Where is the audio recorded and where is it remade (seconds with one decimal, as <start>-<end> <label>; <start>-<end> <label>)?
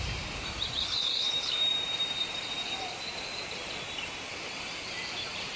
0.0-1.7 remade; 1.7-5.1 recorded; 5.1-5.6 remade